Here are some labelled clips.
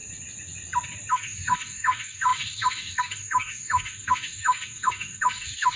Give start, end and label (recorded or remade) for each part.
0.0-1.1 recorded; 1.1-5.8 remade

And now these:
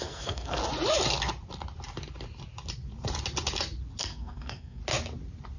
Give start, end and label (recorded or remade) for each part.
0.0-0.6 remade; 0.6-4.0 recorded; 4.0-4.8 remade; 4.8-5.6 recorded